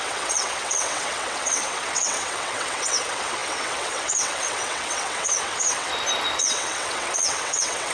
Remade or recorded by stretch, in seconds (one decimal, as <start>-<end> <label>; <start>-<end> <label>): 0.0-5.9 remade; 5.9-6.4 recorded; 6.4-7.9 remade